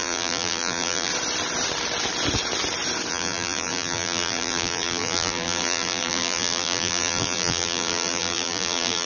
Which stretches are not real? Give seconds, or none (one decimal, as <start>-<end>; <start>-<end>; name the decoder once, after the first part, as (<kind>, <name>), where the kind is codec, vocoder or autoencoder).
0.0-1.1 (vocoder, BigVGAN v2); 3.1-9.1